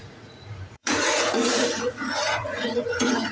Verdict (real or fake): fake